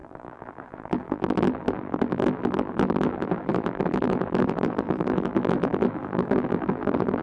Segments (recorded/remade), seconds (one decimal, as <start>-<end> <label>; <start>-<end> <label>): 0.0-7.2 remade